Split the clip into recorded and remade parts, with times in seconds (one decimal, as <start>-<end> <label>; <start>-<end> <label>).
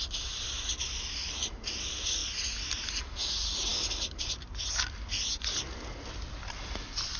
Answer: 0.0-7.2 recorded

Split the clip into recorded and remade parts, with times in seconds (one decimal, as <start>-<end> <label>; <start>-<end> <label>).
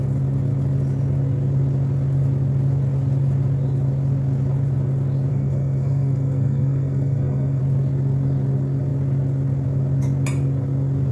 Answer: 0.0-5.3 recorded; 5.3-7.6 remade; 7.6-11.1 recorded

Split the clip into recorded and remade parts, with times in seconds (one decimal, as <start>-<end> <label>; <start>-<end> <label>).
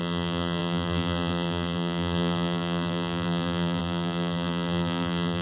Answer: 0.0-5.4 remade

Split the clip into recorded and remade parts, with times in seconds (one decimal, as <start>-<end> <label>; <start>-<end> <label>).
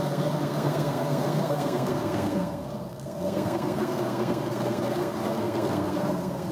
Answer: 0.0-6.5 remade